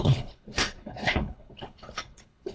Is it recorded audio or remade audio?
remade